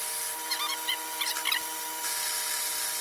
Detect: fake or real real